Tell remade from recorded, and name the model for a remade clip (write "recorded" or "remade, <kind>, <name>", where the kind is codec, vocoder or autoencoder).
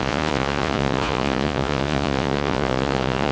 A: remade, vocoder, Vocos